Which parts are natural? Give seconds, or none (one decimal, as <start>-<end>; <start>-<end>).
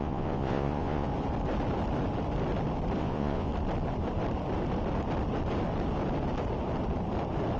1.1-3.0; 3.5-7.6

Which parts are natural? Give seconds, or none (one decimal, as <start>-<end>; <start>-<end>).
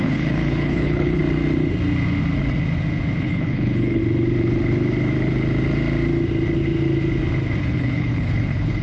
1.2-3.2; 4.0-7.6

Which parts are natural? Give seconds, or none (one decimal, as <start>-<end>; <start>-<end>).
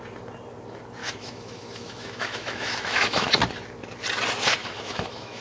0.0-1.0; 3.3-4.6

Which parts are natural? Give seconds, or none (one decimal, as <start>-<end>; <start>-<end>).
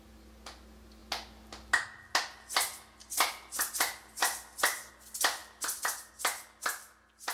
0.0-7.3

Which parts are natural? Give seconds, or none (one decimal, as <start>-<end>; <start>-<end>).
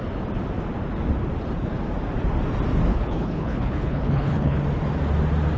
0.0-2.9; 4.6-5.6